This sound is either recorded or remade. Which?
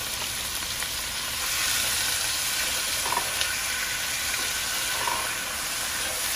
recorded